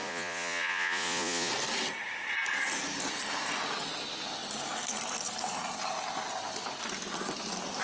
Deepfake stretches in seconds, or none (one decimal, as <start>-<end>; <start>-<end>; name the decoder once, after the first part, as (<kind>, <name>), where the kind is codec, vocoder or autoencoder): 0.0-1.5 (vocoder, Vocos)